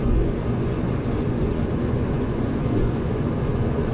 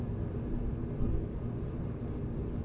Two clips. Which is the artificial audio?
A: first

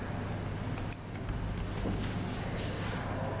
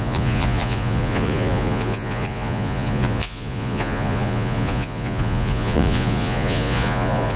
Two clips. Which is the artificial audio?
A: second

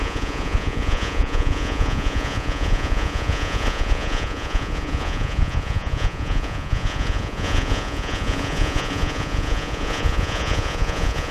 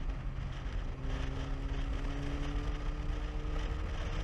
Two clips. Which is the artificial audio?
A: first